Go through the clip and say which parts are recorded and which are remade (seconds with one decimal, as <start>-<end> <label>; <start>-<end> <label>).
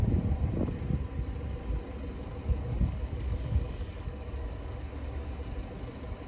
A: 0.0-2.4 recorded; 2.4-5.3 remade; 5.3-6.3 recorded